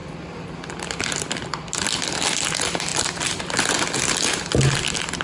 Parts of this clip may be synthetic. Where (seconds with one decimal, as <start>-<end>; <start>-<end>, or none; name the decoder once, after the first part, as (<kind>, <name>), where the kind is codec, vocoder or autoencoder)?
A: 2.9-3.4 (vocoder, BigVGAN v2)